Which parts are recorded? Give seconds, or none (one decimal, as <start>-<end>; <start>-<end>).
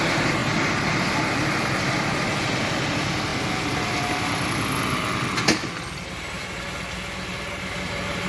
0.0-0.4; 2.1-8.3